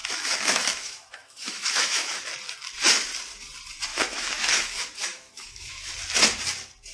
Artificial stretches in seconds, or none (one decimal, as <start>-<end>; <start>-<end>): 0.0-2.2; 3.9-5.9